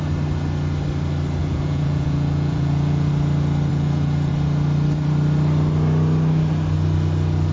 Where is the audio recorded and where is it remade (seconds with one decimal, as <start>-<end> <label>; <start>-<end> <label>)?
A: 0.0-1.4 recorded; 1.4-3.1 remade; 3.1-3.7 recorded; 3.7-4.3 remade; 4.3-7.5 recorded